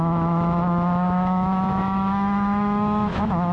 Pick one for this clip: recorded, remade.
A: remade